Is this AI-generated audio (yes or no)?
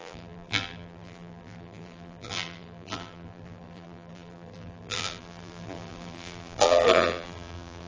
yes